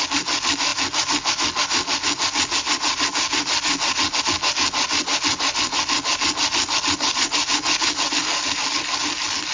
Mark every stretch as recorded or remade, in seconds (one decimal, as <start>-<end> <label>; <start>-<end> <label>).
0.0-9.5 recorded